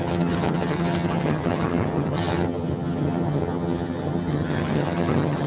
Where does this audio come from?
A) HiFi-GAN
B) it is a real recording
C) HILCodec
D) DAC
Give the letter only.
A